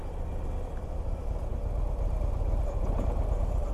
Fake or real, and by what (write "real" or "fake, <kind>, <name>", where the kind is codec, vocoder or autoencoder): real